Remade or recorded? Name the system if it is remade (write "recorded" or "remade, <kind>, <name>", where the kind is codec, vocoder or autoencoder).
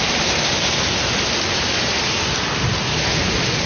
recorded